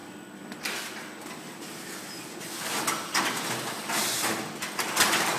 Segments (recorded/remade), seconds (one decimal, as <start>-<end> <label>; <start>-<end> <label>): 0.0-5.4 recorded